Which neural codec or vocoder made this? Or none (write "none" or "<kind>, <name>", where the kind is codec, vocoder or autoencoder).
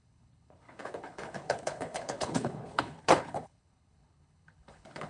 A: codec, HILCodec